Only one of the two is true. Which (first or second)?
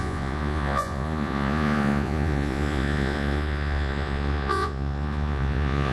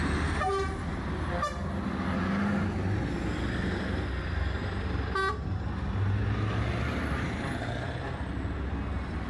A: second